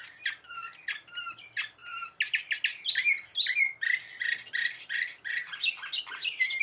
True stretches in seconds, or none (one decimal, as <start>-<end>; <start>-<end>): 0.0-6.6